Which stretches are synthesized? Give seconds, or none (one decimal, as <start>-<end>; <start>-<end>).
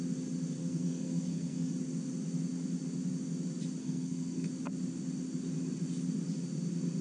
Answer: 0.6-1.7; 3.8-4.5